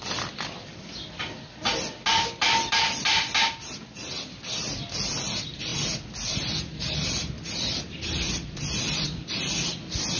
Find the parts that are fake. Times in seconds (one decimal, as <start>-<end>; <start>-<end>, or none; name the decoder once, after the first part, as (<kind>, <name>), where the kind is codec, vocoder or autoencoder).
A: none